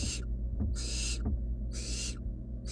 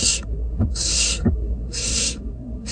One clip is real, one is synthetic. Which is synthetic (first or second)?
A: second